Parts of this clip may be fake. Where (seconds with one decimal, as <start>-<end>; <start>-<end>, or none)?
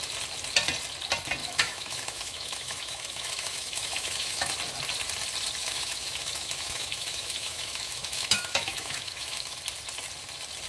1.4-4.5; 5.6-9.6